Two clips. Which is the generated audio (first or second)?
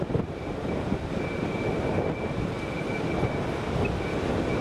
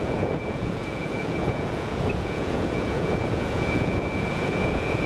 second